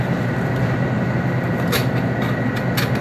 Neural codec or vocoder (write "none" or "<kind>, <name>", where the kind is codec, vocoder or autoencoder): none